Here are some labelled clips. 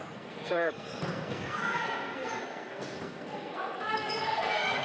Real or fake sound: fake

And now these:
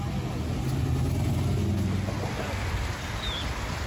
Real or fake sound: real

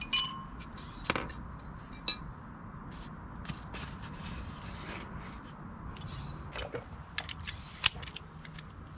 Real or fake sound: real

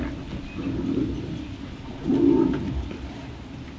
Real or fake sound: real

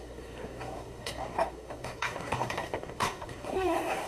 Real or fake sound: fake